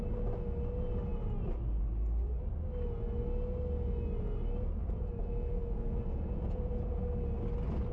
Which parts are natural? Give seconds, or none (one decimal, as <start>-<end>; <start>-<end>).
0.0-4.8; 7.0-7.9